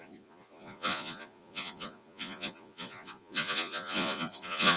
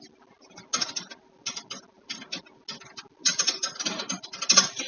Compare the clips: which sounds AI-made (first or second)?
first